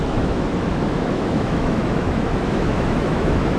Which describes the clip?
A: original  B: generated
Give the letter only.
B